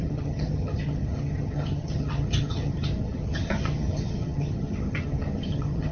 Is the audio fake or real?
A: fake